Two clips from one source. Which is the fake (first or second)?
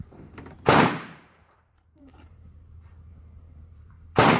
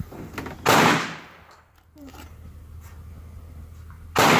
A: first